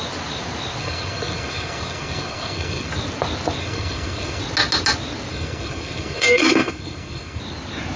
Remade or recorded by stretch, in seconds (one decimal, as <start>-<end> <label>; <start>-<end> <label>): 0.0-0.8 recorded; 0.8-2.9 remade; 2.9-3.6 recorded; 3.6-4.4 remade; 4.4-5.3 recorded; 5.3-7.4 remade; 7.4-8.0 recorded